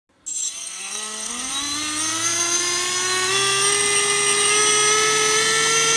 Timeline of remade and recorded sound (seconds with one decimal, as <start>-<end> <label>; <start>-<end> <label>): 0.0-0.6 recorded; 0.6-1.5 remade; 1.5-6.0 recorded